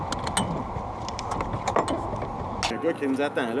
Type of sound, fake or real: real